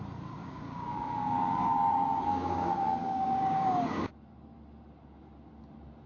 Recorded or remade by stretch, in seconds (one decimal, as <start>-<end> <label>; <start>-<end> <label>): 0.0-0.4 recorded; 0.4-4.1 remade; 4.1-6.1 recorded